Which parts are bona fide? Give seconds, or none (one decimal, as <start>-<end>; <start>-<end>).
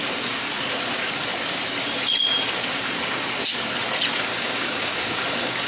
0.0-4.3